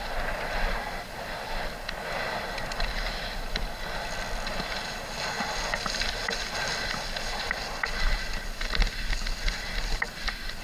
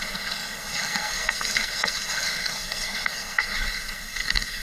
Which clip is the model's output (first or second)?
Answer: second